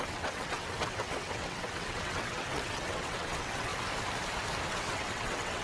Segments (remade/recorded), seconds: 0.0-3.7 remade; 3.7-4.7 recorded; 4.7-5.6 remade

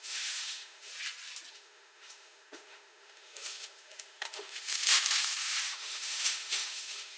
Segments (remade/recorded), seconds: 0.0-0.9 remade; 0.9-1.5 recorded; 1.5-7.2 remade